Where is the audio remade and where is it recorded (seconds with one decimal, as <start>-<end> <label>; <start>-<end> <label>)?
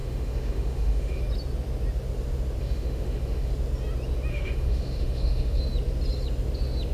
0.0-1.2 remade; 1.2-2.6 recorded; 2.6-3.5 remade; 3.5-4.3 recorded; 4.3-5.6 remade; 5.6-6.9 recorded